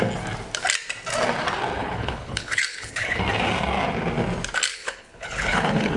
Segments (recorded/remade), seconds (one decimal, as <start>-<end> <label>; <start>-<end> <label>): 0.0-1.8 recorded; 1.8-3.2 remade; 3.2-4.7 recorded; 4.7-6.0 remade